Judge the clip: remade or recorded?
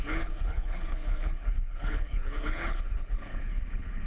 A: remade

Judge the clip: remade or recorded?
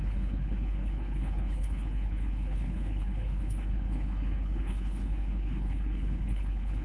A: remade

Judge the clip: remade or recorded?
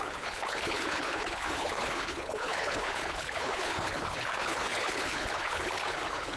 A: remade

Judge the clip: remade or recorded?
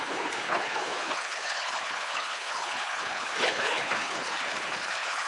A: remade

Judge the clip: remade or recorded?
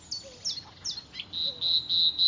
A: recorded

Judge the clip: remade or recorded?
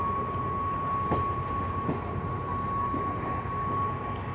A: recorded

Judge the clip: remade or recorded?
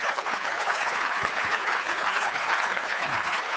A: remade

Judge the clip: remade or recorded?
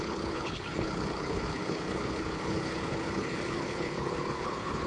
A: remade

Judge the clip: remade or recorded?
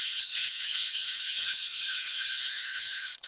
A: remade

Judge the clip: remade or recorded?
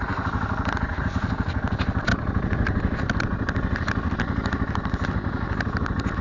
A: recorded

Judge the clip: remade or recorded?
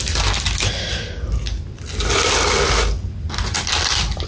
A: recorded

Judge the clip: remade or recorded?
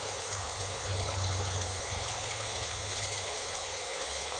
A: remade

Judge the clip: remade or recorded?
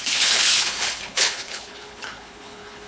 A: remade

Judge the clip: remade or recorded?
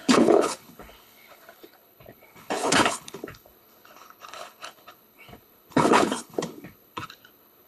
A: remade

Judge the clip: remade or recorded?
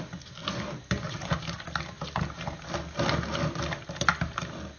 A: recorded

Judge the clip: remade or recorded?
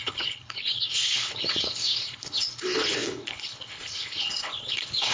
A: remade